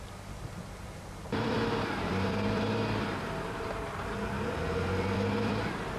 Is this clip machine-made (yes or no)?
yes